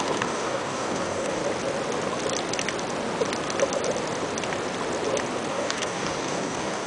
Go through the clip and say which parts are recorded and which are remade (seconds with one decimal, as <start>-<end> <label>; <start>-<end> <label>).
0.0-1.4 remade; 1.4-5.5 recorded; 5.5-6.9 remade